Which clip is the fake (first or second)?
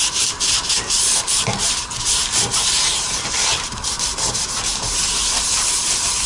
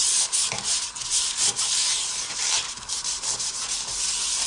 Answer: first